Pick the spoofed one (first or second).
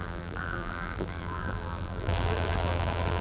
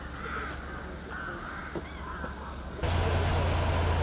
first